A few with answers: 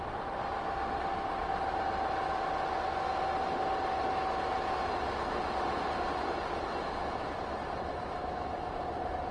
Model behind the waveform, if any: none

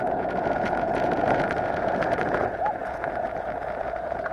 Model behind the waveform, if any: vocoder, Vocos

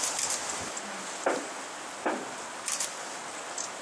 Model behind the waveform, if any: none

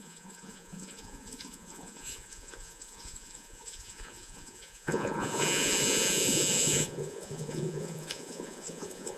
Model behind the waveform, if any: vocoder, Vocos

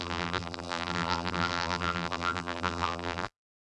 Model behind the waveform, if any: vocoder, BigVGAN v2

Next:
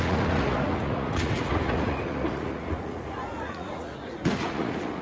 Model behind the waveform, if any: vocoder, Vocos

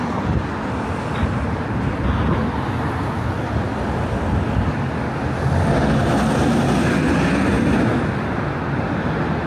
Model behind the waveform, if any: none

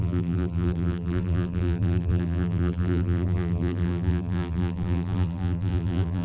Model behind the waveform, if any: vocoder, BigVGAN v2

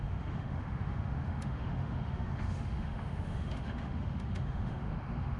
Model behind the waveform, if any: autoencoder, DAC-VAE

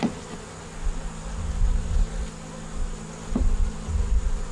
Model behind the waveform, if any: none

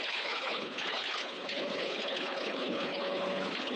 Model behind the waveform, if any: codec, HILCodec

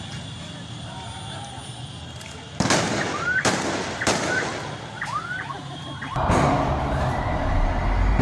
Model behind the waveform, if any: none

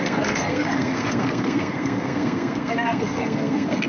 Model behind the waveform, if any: codec, SNAC